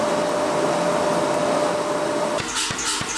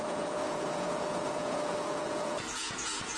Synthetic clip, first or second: second